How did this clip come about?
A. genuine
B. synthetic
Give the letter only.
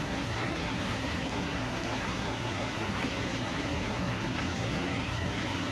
B